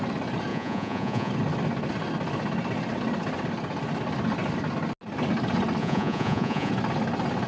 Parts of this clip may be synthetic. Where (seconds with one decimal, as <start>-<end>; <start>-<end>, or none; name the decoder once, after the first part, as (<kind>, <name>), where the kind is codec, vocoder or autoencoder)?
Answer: 0.5-1.3 (vocoder, Vocos); 5.8-6.7